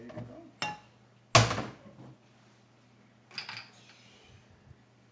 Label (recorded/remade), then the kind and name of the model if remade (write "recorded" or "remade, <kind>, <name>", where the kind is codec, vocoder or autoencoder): recorded